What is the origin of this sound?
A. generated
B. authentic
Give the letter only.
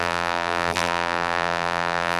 A